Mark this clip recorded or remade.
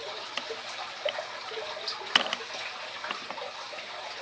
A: recorded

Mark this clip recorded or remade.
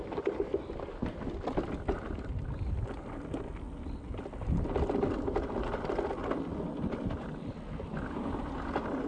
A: recorded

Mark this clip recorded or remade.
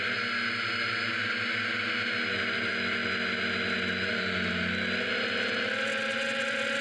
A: recorded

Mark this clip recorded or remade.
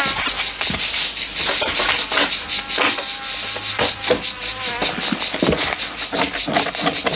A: recorded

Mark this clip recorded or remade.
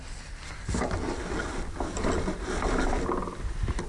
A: recorded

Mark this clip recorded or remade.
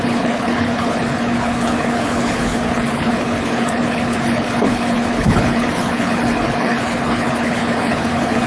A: remade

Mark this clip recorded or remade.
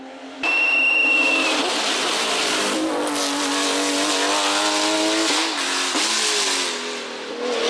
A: recorded